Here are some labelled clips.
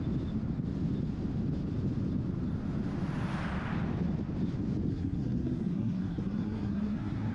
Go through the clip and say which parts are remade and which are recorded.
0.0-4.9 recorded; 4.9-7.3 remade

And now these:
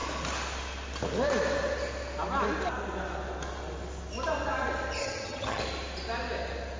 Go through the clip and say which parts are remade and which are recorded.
0.0-5.0 recorded; 5.0-5.6 remade; 5.6-6.8 recorded

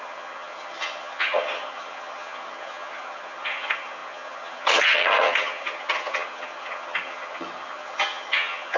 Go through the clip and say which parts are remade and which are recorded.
0.0-8.8 remade